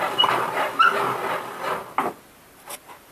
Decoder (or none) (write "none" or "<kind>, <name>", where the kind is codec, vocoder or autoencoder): none